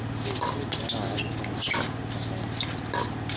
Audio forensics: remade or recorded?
recorded